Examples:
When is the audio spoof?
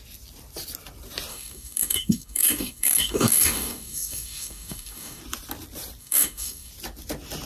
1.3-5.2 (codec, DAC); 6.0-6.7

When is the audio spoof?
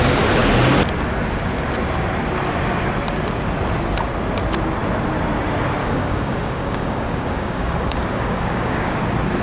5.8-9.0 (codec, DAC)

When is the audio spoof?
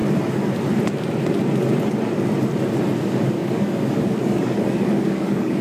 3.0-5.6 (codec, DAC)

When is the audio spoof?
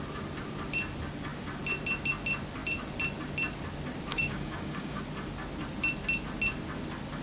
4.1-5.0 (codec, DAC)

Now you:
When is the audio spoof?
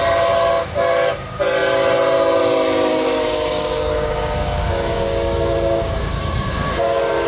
0.6-1.1 (codec, DAC); 2.9-7.3